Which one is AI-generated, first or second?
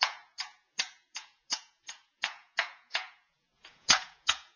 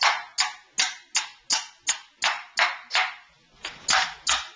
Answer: first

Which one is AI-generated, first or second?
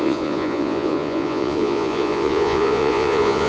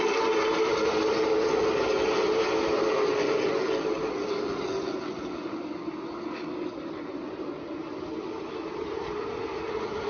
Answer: first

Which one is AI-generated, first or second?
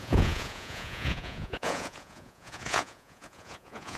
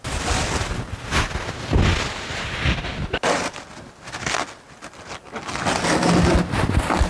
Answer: first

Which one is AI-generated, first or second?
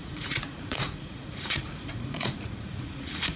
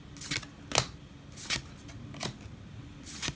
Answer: first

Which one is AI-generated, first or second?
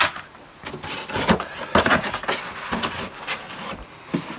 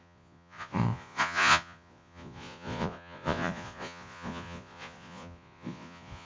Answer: second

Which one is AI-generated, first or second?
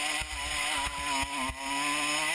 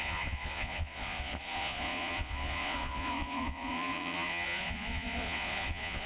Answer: second